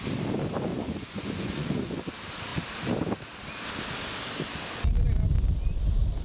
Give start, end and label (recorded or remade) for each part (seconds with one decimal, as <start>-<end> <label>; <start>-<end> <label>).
0.0-0.7 recorded; 0.7-2.0 remade; 2.0-6.2 recorded